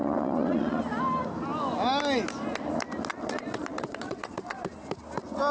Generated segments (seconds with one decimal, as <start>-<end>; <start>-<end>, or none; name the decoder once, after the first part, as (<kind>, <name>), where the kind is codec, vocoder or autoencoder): 0.0-0.8 (vocoder, Vocos); 3.1-4.7